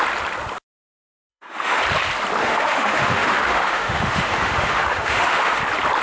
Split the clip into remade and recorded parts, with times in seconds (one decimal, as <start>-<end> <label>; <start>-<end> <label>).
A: 0.0-1.3 recorded; 1.3-1.8 remade; 1.8-2.4 recorded; 2.4-5.6 remade; 5.6-6.0 recorded

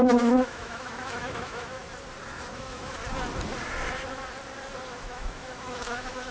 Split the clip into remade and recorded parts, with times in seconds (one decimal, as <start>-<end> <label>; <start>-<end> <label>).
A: 0.0-1.8 remade; 1.8-2.5 recorded; 2.5-3.0 remade; 3.0-4.9 recorded; 4.9-6.3 remade

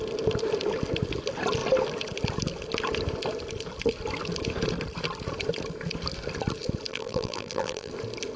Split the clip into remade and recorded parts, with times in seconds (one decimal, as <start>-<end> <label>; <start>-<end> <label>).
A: 0.0-6.9 recorded; 6.9-7.9 remade; 7.9-8.4 recorded

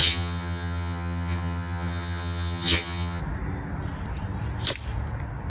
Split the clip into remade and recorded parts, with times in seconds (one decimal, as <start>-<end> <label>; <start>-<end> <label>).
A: 0.0-3.2 remade; 3.2-5.5 recorded

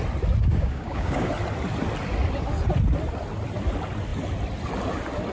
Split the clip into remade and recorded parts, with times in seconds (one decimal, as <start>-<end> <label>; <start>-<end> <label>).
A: 0.0-0.5 recorded; 0.5-1.3 remade; 1.3-5.3 recorded

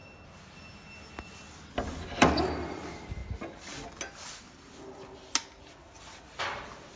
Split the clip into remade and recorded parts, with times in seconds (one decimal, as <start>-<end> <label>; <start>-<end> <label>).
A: 0.0-7.0 recorded